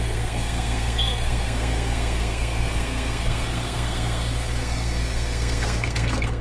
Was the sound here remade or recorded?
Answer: remade